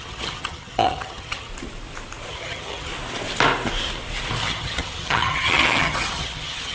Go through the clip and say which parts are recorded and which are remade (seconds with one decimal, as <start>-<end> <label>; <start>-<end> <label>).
0.0-1.5 remade; 1.5-2.3 recorded; 2.3-2.9 remade; 2.9-4.4 recorded; 4.4-6.7 remade